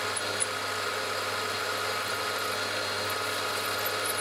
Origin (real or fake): real